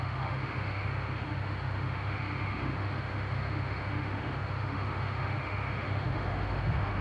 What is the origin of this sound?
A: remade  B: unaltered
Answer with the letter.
A